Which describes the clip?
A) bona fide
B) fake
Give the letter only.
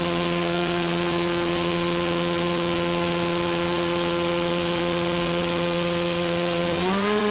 B